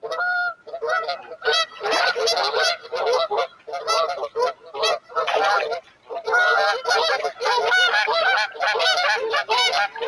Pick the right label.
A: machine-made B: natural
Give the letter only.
B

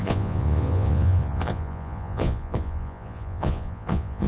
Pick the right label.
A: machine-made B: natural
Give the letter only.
A